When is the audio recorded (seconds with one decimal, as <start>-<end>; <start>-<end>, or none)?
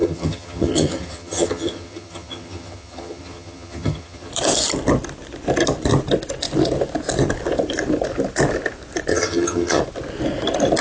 4.3-9.1; 9.8-10.8